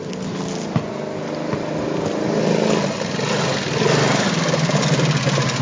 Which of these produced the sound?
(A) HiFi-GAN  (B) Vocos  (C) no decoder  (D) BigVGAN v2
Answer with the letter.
C